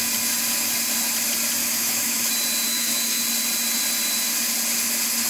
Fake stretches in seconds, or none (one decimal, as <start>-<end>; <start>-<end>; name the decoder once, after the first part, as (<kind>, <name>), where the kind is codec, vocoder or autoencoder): 1.6-2.3 (autoencoder, DAC-VAE); 2.7-3.2